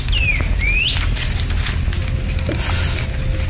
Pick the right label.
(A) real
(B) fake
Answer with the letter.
A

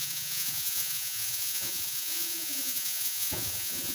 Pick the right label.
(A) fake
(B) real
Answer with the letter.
A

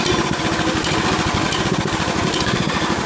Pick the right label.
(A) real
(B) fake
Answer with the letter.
A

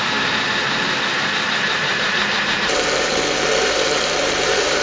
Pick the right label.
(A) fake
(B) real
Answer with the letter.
A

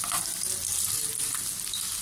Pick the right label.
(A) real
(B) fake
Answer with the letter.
A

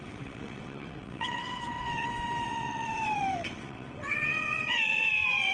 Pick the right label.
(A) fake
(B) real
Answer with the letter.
A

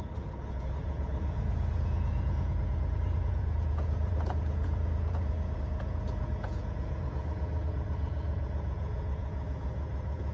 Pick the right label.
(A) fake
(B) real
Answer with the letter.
A